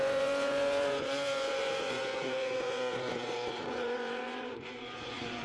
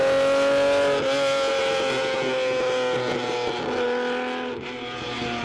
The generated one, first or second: first